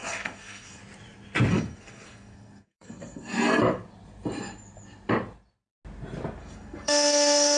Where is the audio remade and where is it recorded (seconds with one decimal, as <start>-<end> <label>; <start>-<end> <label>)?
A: 0.0-0.8 remade; 0.8-1.5 recorded; 1.5-3.6 remade; 3.6-6.4 recorded; 6.4-7.6 remade